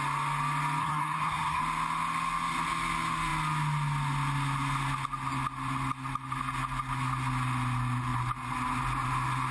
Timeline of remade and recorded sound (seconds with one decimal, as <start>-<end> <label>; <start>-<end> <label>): 0.0-0.8 recorded; 0.8-1.6 remade; 1.6-9.5 recorded